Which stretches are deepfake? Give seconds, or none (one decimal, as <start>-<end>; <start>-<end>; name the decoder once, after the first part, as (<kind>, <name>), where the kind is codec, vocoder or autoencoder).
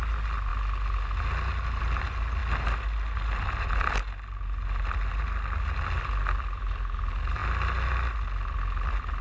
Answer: none